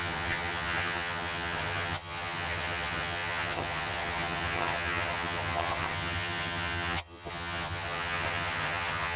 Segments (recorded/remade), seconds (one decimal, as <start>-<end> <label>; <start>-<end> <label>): 0.0-9.2 remade